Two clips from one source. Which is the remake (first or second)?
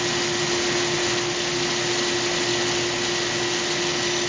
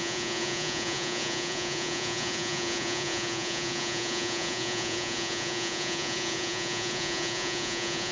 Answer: second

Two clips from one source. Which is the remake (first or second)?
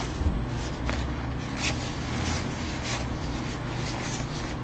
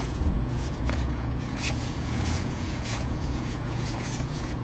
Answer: second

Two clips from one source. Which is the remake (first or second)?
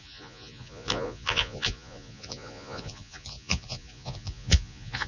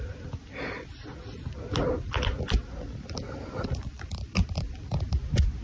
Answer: first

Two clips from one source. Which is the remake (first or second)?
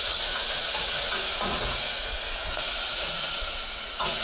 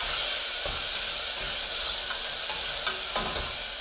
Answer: first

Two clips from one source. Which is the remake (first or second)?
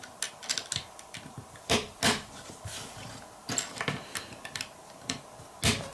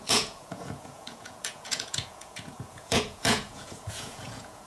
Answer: second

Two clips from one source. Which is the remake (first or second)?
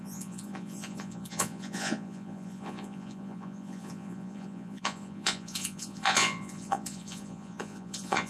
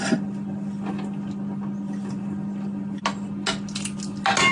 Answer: first